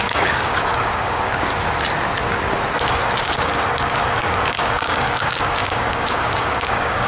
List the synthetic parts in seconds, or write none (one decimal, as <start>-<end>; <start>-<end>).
0.0-1.5; 3.2-7.1